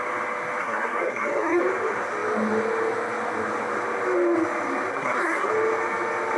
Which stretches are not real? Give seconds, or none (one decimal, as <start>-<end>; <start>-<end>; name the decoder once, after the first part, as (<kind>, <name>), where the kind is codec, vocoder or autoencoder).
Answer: 0.6-1.6 (codec, SNAC); 4.9-5.5